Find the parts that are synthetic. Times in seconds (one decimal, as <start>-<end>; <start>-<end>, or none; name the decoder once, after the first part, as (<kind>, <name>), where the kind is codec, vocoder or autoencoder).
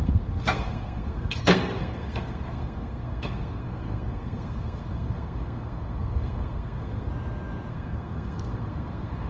0.0-7.1 (codec, SNAC); 7.7-9.3